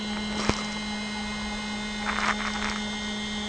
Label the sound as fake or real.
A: real